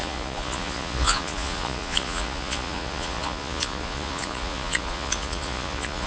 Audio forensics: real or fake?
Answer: fake